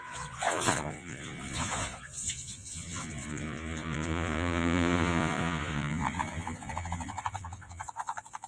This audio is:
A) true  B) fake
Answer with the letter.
B